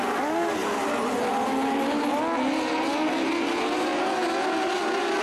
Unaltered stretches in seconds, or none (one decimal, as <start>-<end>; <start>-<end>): 1.3-3.5; 3.9-5.2